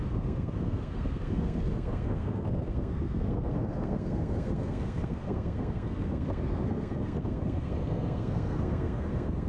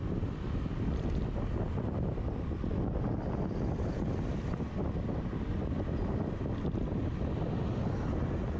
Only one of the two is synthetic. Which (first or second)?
first